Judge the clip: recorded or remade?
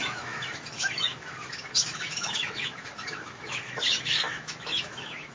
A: remade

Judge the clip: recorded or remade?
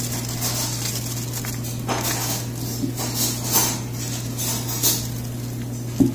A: recorded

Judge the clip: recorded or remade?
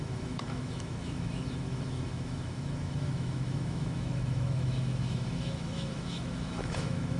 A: remade